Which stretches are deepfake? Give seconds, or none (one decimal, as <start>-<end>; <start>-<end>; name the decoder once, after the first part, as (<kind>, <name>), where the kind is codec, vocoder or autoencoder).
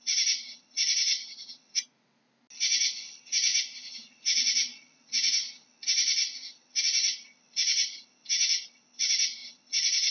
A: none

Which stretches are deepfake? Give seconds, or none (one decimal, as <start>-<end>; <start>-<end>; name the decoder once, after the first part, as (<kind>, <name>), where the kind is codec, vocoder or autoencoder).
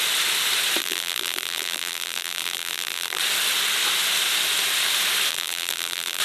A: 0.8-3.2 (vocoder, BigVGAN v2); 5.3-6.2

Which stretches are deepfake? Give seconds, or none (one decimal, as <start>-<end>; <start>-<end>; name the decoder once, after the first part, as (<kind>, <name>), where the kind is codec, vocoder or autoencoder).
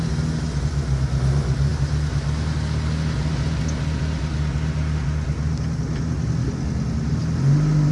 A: none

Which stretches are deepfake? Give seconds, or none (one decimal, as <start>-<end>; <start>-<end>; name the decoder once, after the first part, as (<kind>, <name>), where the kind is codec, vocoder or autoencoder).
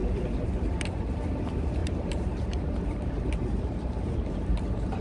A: 0.0-1.0 (vocoder, BigVGAN v2); 1.8-4.6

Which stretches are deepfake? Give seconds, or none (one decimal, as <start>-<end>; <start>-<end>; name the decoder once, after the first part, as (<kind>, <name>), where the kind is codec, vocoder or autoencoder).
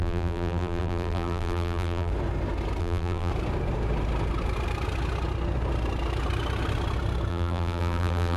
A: 0.0-2.1 (vocoder, BigVGAN v2); 2.8-3.3; 7.3-8.4